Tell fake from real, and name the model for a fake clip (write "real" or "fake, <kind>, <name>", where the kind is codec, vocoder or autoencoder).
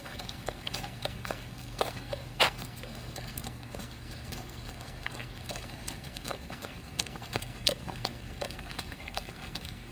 fake, codec, SNAC